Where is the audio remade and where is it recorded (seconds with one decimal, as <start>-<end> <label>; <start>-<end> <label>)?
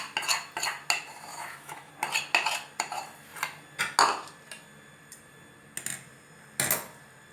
0.0-1.3 recorded; 1.3-1.9 remade; 1.9-7.3 recorded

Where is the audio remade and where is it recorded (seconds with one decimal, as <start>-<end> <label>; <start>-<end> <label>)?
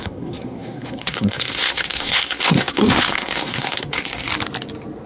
0.0-4.3 remade; 4.3-5.1 recorded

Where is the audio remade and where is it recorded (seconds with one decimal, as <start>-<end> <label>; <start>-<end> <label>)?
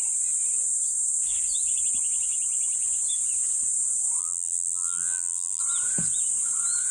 0.0-4.2 recorded; 4.2-5.6 remade; 5.6-6.9 recorded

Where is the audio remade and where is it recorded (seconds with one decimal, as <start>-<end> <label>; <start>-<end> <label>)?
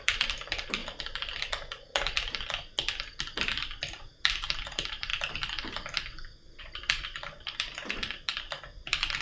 0.0-0.8 remade; 0.8-4.3 recorded; 4.3-5.1 remade; 5.1-6.6 recorded; 6.6-9.2 remade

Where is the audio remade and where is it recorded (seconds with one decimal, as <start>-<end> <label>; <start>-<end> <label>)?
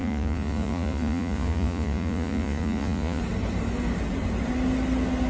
0.0-3.2 remade; 3.2-5.3 recorded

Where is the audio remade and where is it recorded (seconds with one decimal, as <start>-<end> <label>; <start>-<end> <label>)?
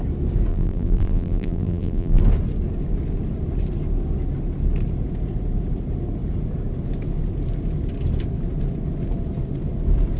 0.0-0.5 recorded; 0.5-2.2 remade; 2.2-10.2 recorded